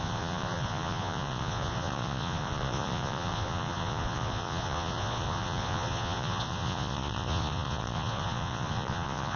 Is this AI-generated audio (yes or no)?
yes